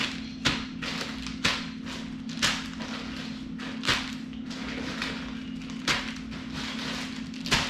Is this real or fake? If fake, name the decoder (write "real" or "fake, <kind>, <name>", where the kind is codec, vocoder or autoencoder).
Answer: real